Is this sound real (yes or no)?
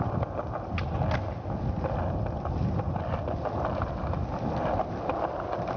yes